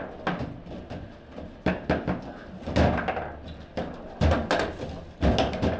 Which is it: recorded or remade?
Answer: recorded